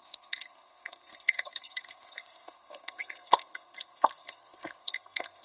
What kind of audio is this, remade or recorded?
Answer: remade